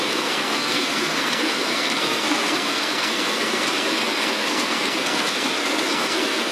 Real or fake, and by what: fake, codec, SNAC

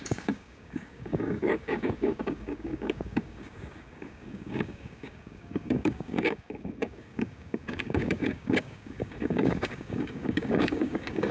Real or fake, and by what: fake, codec, DAC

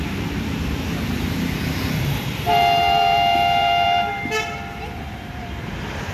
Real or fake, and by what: fake, vocoder, BigVGAN v2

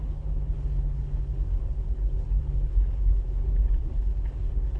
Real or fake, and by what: fake, codec, HILCodec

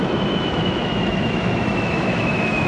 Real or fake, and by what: fake, autoencoder, DAC-VAE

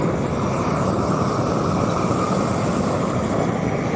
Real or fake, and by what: real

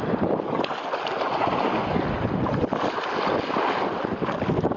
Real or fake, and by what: real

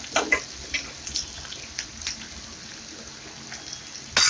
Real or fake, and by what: real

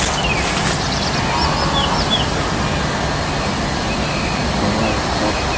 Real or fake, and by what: real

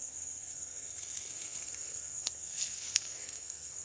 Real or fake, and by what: fake, codec, SNAC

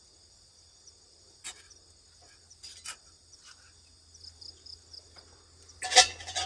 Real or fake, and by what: real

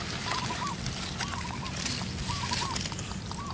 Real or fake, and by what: real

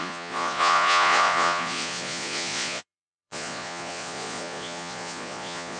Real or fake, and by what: fake, vocoder, Vocos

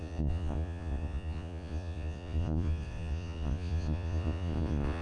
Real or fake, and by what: fake, vocoder, Vocos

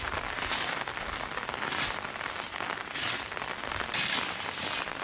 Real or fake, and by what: real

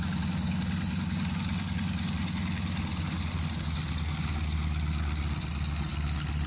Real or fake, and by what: real